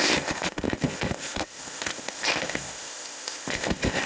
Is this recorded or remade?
remade